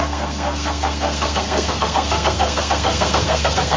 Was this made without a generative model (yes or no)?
no